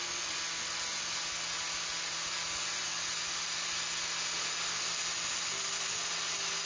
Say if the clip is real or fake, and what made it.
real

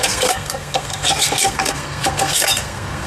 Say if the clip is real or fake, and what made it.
fake, codec, SNAC